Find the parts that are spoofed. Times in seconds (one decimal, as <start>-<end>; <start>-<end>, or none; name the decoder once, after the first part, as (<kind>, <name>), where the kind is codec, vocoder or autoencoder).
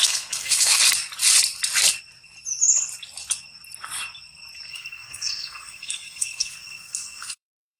0.0-0.8 (codec, SNAC); 4.7-7.8